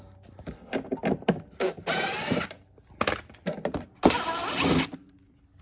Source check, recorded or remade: recorded